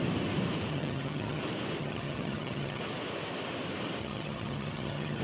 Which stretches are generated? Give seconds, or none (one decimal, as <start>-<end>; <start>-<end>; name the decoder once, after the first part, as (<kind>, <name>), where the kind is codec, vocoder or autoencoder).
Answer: 0.7-1.4 (vocoder, HiFi-GAN); 1.8-2.8; 4.0-5.2